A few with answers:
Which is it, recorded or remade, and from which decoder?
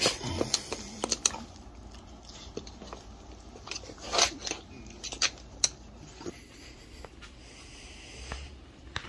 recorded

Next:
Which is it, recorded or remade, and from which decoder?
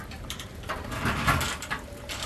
recorded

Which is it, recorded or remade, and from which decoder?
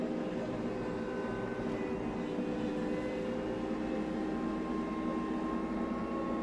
recorded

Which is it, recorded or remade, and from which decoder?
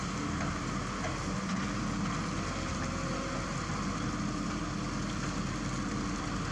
recorded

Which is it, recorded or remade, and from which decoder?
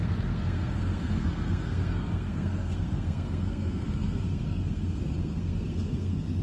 remade, codec, SNAC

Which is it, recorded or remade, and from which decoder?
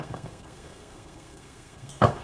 remade, codec, SNAC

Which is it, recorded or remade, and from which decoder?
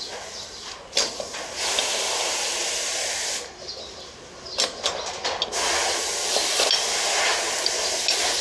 recorded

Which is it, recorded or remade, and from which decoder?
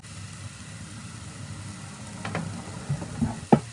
recorded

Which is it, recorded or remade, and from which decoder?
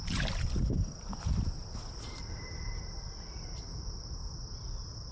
recorded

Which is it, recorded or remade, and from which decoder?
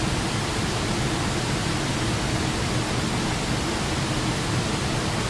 recorded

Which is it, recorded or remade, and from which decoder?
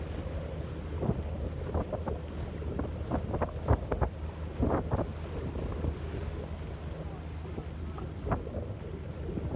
recorded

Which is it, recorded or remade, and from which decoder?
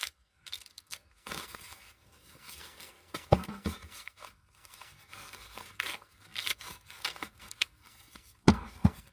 remade, codec, SNAC